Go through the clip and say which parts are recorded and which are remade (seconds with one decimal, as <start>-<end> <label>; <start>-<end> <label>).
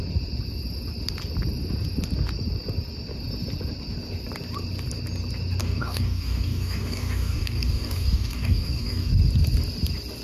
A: 0.0-5.6 recorded; 5.6-9.1 remade; 9.1-10.2 recorded